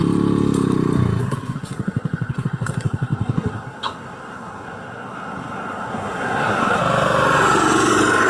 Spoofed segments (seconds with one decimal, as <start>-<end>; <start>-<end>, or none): 1.2-6.8